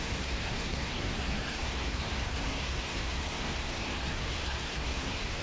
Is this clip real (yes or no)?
no